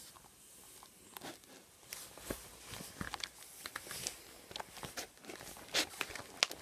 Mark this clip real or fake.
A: real